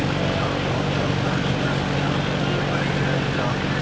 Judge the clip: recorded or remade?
recorded